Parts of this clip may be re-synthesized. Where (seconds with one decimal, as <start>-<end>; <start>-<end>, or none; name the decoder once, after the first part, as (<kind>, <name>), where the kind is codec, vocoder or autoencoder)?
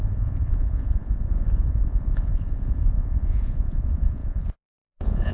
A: 0.0-5.3 (vocoder, Vocos)